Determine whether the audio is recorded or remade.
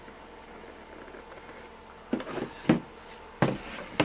recorded